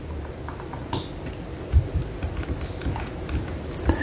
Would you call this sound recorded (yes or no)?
yes